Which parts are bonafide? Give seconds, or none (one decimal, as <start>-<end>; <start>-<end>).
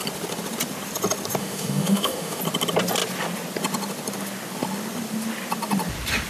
0.0-1.4; 2.4-6.3